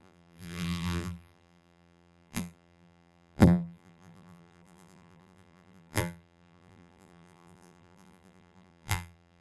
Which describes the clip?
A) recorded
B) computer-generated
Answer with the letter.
B